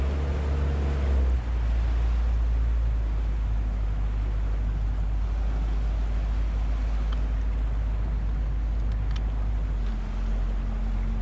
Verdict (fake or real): real